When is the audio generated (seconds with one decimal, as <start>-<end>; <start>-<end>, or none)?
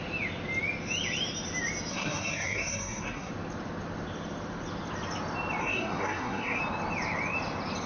1.9-3.3; 5.6-6.6